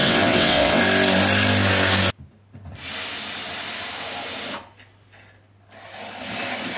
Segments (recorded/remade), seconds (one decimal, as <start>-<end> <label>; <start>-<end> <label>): 0.0-0.8 remade; 0.8-6.8 recorded